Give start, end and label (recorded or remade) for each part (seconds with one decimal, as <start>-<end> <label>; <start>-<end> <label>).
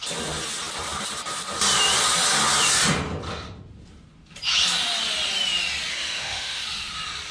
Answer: 0.0-5.9 recorded; 5.9-6.6 remade; 6.6-7.3 recorded